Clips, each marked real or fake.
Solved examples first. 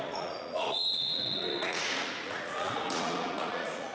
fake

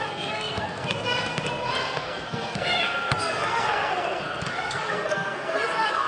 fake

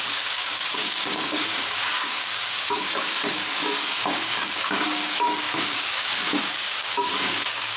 fake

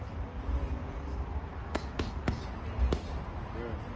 real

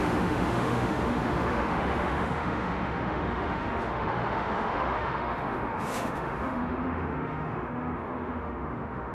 fake